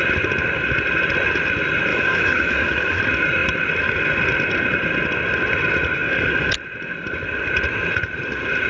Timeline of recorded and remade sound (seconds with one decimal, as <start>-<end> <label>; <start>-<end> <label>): 0.0-1.9 recorded; 1.9-3.0 remade; 3.0-8.7 recorded